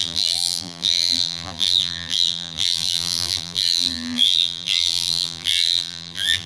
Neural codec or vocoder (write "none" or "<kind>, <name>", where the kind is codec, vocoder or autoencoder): vocoder, BigVGAN v2